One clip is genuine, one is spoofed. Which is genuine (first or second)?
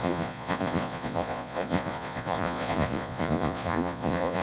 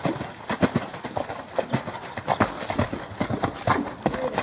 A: second